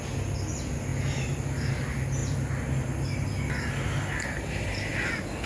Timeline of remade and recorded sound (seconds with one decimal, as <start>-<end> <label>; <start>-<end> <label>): 0.0-5.5 recorded